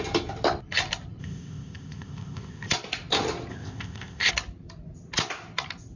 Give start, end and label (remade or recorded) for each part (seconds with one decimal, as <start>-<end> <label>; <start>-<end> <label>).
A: 0.0-1.2 recorded; 1.2-2.7 remade; 2.7-3.5 recorded; 3.5-4.3 remade; 4.3-6.0 recorded